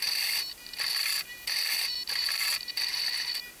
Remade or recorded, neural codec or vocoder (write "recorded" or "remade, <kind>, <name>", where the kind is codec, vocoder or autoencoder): remade, vocoder, BigVGAN v2